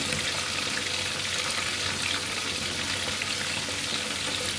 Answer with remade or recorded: recorded